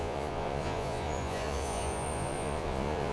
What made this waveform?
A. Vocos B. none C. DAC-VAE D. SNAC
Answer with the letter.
A